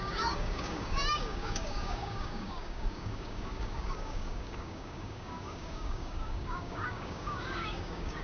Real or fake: fake